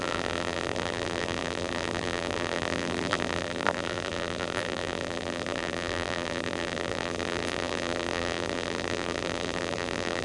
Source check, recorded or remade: remade